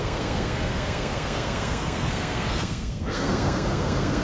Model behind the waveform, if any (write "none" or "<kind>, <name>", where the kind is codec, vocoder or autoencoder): codec, SNAC